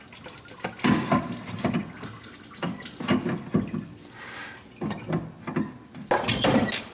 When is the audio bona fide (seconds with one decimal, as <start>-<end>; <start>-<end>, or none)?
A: 0.0-6.9